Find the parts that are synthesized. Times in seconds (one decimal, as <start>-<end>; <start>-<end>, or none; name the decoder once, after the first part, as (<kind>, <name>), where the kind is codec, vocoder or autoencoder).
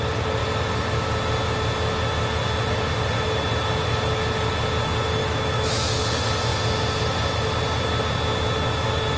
5.2-6.0 (autoencoder, DAC-VAE)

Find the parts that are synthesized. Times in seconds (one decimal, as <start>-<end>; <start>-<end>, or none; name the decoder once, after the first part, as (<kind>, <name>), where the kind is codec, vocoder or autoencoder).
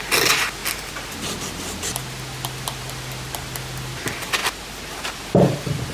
none